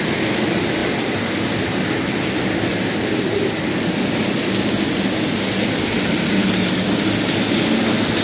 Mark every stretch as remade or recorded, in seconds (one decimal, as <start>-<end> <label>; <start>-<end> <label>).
0.0-8.2 recorded